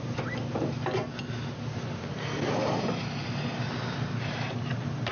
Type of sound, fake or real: real